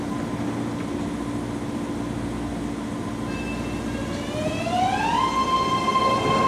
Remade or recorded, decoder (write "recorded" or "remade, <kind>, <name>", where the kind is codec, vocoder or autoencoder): recorded